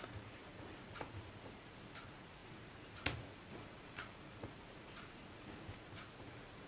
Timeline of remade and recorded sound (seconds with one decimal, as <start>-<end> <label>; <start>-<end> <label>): 0.0-6.7 remade